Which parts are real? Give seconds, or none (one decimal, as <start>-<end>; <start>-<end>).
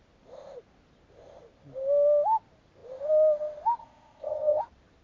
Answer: 0.0-3.8; 4.6-5.0